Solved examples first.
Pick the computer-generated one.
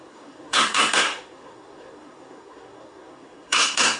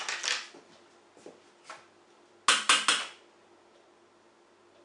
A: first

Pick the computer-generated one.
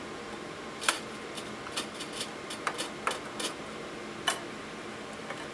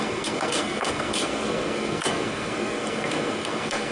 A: second